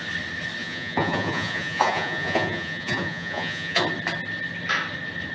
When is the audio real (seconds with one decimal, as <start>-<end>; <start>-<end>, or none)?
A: 0.0-0.6; 3.8-5.3